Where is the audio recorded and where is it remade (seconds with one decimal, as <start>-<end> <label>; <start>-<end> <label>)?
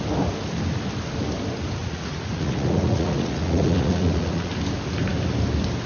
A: 0.0-1.8 recorded; 1.8-4.5 remade; 4.5-5.9 recorded